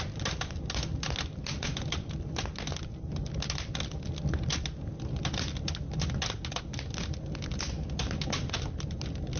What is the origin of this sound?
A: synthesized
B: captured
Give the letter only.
B